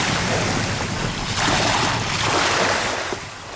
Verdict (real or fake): real